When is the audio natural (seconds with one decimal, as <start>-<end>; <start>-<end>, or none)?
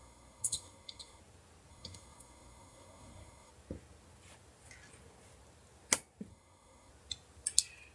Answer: 1.2-1.7; 3.5-6.3; 6.9-7.9